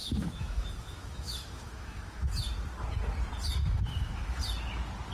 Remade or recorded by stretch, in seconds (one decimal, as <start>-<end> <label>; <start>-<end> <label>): 0.0-2.3 remade; 2.3-3.6 recorded; 3.6-4.4 remade; 4.4-5.1 recorded